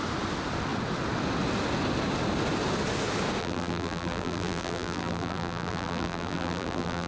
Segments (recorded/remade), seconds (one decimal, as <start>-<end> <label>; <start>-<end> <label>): 0.0-3.4 recorded; 3.4-7.1 remade